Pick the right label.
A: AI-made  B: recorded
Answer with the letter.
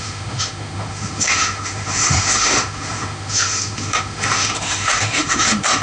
A